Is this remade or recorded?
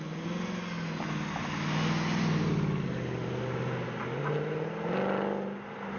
recorded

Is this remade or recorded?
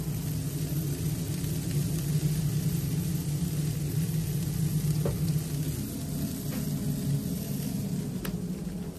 recorded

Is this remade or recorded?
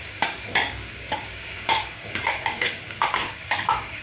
remade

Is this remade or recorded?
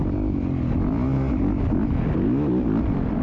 recorded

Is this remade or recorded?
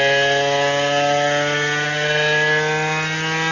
recorded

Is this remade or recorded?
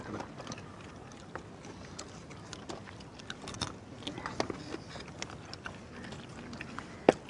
recorded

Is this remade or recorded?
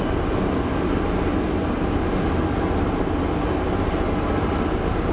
recorded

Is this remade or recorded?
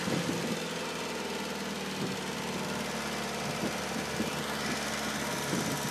recorded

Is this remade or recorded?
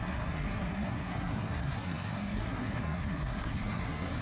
remade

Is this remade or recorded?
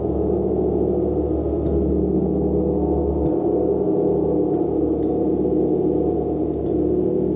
recorded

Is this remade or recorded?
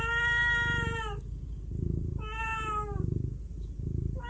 recorded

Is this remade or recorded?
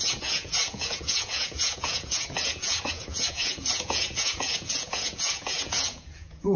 remade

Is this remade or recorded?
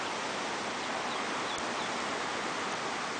recorded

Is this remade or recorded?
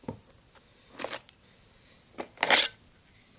recorded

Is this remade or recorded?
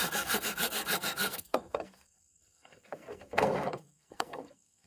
remade